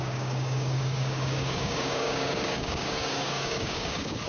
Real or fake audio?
fake